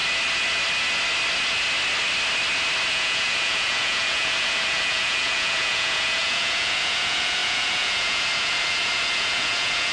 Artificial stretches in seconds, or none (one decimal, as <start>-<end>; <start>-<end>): 2.9-9.9